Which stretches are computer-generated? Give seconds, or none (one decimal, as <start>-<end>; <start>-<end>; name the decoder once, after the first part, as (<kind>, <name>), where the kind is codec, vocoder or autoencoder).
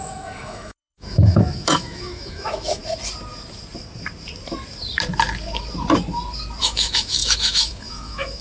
0.0-2.8 (autoencoder, DAC-VAE); 6.6-8.4